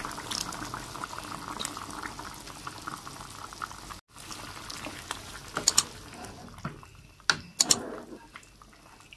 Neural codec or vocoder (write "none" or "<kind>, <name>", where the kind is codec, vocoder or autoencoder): none